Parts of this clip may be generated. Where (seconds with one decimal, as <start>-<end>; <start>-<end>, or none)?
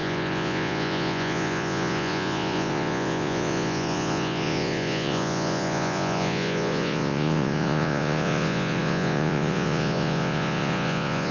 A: 0.0-11.3